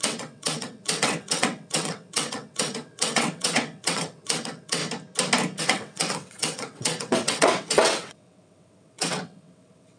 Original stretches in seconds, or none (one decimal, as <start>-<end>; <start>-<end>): 4.8-5.6